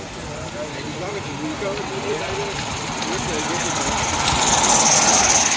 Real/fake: real